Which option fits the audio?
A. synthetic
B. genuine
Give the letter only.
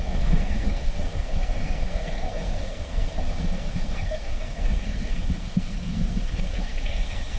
A